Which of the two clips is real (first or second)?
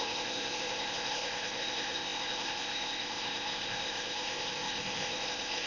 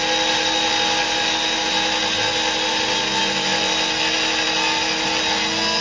second